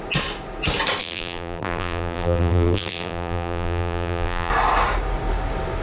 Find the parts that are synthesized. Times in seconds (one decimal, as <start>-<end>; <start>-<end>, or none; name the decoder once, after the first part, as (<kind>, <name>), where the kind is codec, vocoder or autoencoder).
1.0-4.5 (vocoder, BigVGAN v2)